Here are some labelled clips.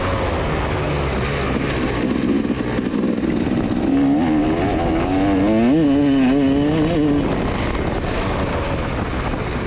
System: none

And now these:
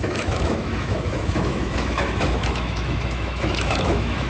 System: autoencoder, DAC-VAE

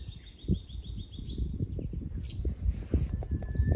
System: none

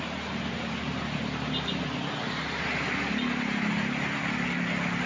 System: none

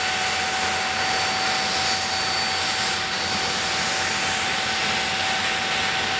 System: none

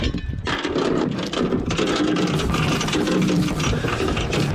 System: vocoder, BigVGAN v2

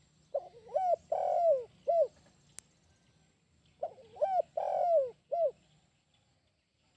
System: none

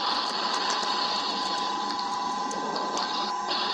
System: none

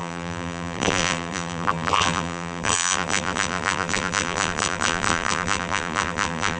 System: vocoder, BigVGAN v2